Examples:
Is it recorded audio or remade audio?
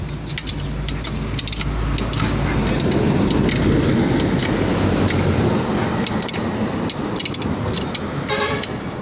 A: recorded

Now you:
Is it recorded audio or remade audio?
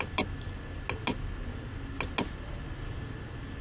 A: recorded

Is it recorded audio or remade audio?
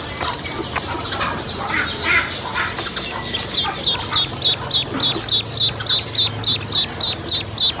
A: recorded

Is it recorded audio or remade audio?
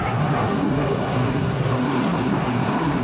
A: remade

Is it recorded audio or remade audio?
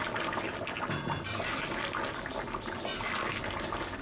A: recorded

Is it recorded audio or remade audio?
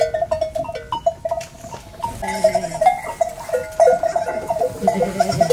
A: recorded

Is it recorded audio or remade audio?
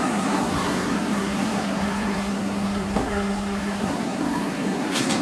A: remade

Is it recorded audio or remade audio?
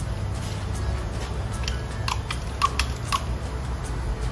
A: recorded